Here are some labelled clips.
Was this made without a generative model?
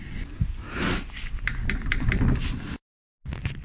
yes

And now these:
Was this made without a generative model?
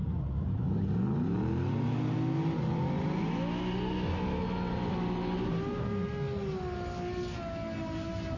yes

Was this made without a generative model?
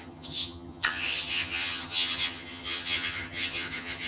no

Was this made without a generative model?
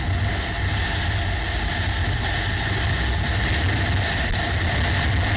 yes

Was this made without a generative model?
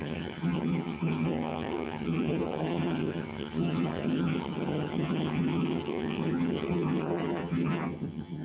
no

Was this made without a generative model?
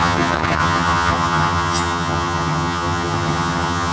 no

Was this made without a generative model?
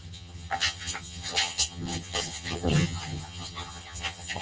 no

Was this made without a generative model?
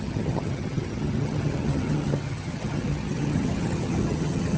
no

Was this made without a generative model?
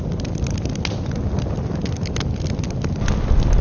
yes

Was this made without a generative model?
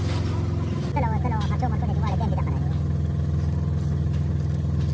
yes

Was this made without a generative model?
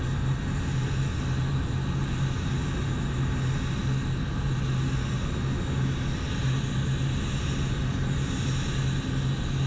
yes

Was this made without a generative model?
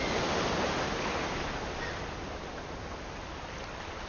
yes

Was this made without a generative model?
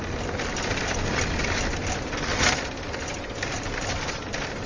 yes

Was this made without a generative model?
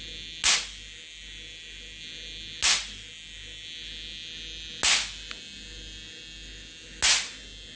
yes